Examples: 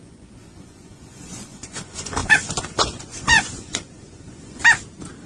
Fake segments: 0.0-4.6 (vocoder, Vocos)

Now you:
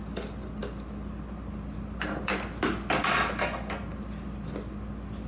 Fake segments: none